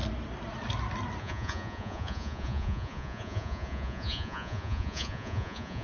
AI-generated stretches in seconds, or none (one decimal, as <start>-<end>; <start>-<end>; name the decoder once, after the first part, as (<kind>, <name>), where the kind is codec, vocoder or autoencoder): 1.2-5.8 (vocoder, Vocos)